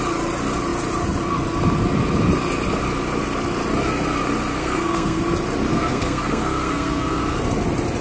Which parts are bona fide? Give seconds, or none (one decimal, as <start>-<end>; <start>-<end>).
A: 0.0-4.6; 5.2-5.7; 7.2-8.0